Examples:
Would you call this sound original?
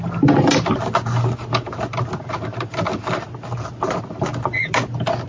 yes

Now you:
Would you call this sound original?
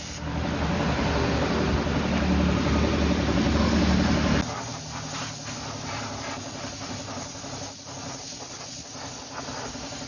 yes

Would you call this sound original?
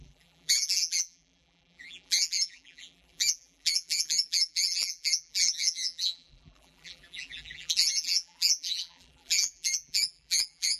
no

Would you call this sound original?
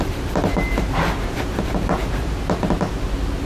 no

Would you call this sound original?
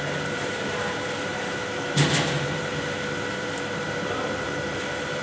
no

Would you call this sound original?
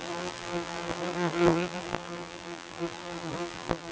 no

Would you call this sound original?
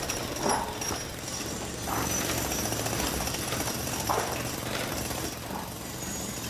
no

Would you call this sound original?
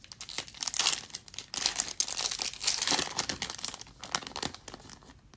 yes